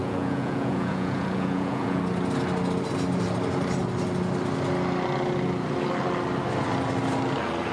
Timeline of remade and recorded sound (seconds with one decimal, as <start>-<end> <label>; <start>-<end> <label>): 0.0-2.0 remade; 2.0-7.7 recorded